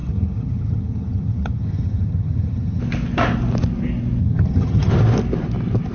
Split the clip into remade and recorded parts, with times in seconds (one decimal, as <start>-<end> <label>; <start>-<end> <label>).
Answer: 0.0-2.8 remade; 2.8-4.2 recorded; 4.2-4.9 remade; 4.9-5.9 recorded